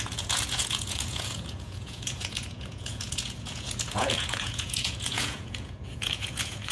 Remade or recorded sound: remade